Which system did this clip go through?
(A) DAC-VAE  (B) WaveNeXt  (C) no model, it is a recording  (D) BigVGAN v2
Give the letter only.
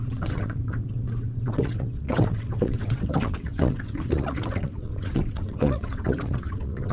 B